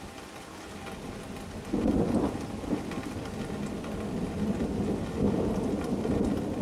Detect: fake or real real